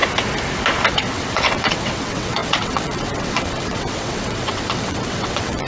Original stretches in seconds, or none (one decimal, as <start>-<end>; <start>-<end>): 0.0-0.9